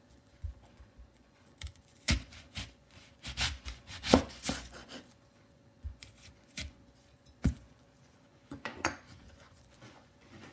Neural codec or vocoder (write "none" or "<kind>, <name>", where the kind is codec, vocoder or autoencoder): vocoder, Vocos